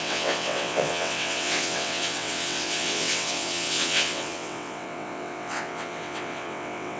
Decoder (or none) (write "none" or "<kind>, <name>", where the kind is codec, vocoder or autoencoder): vocoder, WaveNeXt